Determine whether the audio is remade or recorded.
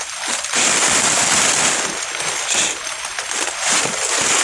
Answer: recorded